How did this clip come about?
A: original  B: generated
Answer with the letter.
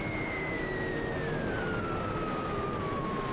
A